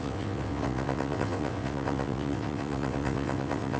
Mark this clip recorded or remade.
remade